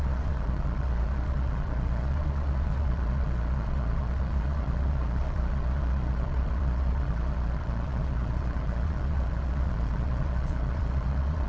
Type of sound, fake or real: fake